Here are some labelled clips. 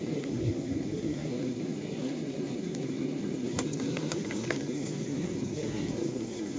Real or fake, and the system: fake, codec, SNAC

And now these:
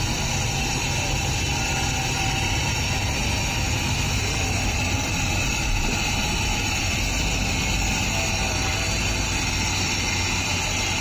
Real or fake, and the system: real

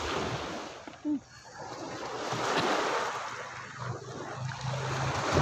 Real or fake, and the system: real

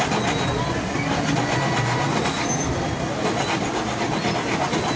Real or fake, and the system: real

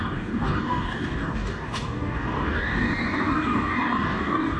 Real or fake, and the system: fake, codec, DAC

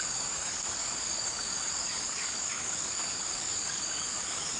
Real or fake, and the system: fake, codec, DAC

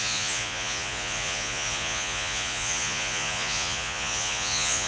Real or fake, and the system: fake, vocoder, Vocos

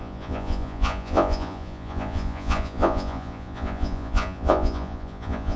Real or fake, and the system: fake, vocoder, Vocos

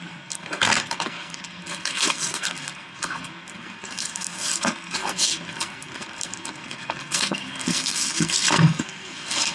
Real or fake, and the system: fake, codec, SNAC